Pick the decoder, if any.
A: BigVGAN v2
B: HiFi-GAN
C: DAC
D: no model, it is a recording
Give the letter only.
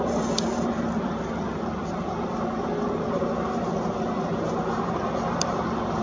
A